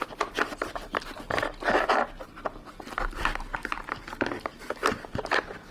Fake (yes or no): no